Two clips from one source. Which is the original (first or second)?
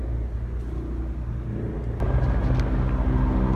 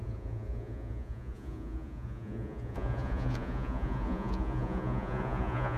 first